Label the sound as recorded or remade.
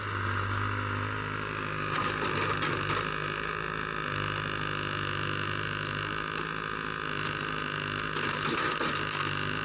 recorded